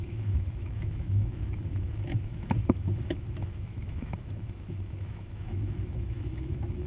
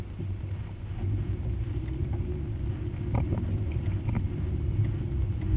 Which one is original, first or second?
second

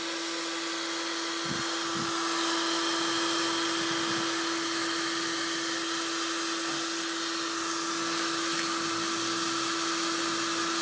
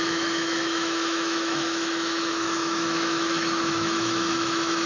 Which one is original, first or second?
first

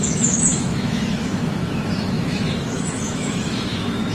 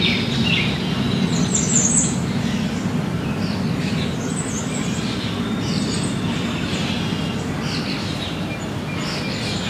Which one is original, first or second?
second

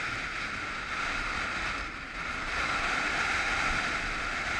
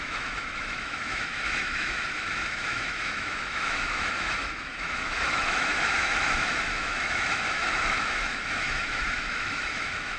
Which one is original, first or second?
first